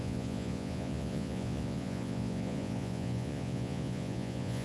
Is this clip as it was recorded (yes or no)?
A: no